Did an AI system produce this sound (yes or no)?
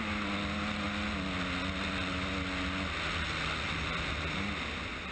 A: no